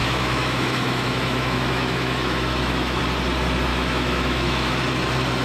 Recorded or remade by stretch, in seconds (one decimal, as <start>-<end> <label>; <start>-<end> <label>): 0.0-3.0 remade; 3.0-3.7 recorded; 3.7-4.8 remade; 4.8-5.4 recorded

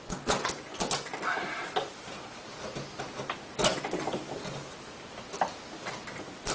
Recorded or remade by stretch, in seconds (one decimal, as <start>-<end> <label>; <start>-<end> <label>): 0.0-6.5 recorded

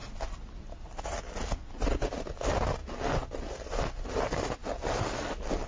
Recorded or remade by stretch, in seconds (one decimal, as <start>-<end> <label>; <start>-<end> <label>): 0.0-5.7 recorded